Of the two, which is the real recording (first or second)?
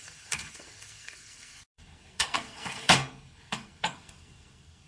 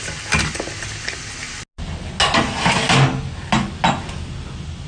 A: second